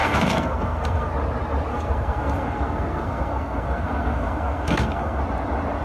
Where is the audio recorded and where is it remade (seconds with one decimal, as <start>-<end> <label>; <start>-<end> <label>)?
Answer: 0.0-1.1 remade; 1.1-1.7 recorded; 1.7-5.2 remade; 5.2-5.8 recorded